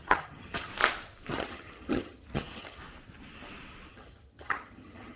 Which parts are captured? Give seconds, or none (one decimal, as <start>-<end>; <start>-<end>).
0.7-1.3; 2.8-3.9